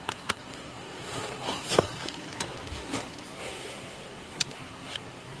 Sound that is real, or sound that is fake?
fake